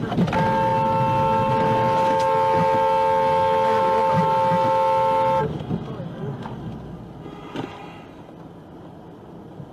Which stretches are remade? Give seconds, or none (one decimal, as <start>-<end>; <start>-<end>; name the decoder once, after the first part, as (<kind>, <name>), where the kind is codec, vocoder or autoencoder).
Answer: none